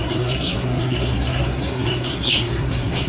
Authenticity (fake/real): fake